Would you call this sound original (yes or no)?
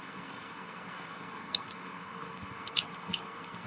no